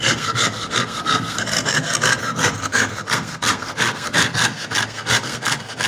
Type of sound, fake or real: fake